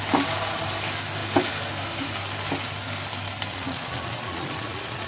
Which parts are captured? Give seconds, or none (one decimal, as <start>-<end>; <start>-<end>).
0.0-3.5